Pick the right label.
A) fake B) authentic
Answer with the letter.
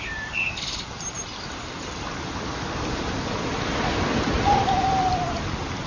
B